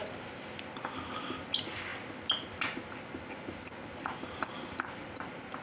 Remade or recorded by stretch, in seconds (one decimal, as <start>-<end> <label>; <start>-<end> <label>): 0.0-5.6 recorded

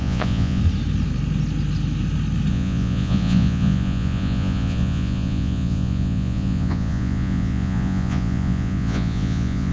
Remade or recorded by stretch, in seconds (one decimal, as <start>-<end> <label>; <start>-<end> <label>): 0.0-0.6 remade; 0.6-2.5 recorded; 2.5-9.7 remade